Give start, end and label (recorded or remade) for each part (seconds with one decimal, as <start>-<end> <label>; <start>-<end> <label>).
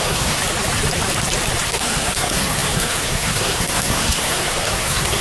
0.0-0.4 remade; 0.4-1.7 recorded; 1.7-5.2 remade